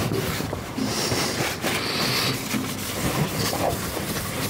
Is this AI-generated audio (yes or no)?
no